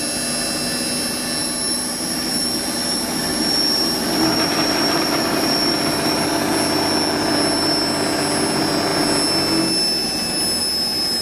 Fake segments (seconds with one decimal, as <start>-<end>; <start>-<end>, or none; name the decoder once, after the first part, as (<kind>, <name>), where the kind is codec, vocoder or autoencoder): 1.4-6.3 (vocoder, BigVGAN v2)